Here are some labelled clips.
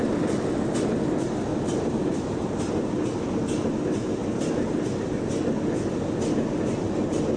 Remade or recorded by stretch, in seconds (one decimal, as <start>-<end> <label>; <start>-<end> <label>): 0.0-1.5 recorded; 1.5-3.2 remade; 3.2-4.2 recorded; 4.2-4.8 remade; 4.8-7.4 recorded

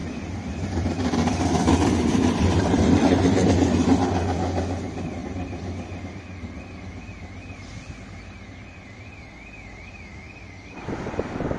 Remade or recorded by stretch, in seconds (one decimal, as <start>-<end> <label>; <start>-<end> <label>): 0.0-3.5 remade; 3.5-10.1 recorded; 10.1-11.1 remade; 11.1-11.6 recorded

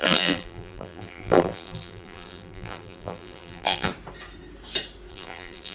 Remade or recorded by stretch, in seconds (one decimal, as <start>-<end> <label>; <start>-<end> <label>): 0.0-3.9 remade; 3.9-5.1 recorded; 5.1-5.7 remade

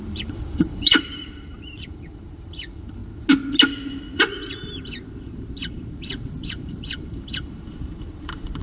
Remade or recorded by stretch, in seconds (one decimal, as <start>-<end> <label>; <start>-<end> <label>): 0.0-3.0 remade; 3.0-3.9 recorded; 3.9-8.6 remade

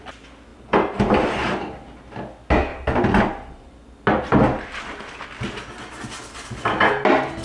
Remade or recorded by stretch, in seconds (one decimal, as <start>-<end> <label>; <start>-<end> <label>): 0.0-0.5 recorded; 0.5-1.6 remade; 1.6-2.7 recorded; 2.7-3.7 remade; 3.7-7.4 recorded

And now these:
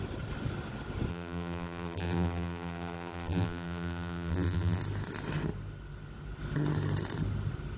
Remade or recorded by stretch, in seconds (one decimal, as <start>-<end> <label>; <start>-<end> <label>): 0.0-1.1 recorded; 1.1-4.8 remade; 4.8-7.8 recorded

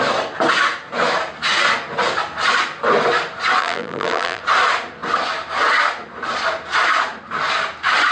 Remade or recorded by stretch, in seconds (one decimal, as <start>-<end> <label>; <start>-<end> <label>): 0.0-3.6 recorded; 3.6-4.4 remade; 4.4-8.1 recorded

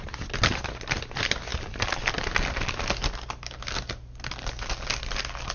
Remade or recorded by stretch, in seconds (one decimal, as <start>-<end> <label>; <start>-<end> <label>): 0.0-5.5 recorded